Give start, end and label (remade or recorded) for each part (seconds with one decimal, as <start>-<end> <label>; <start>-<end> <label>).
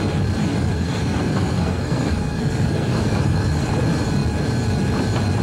0.0-0.5 recorded; 0.5-3.7 remade; 3.7-5.4 recorded